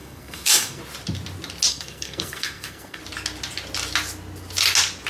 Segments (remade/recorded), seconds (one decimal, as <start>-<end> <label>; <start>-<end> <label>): 0.0-0.8 remade; 0.8-1.7 recorded; 1.7-3.0 remade; 3.0-5.1 recorded